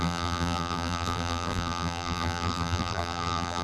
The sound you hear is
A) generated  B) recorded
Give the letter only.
A